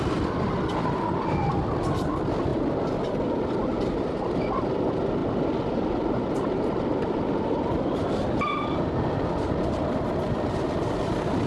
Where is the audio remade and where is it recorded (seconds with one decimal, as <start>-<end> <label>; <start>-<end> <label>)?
0.0-11.5 recorded